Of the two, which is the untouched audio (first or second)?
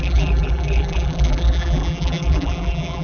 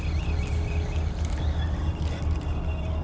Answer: second